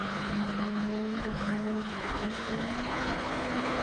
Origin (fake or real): fake